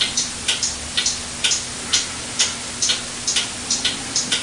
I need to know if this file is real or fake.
real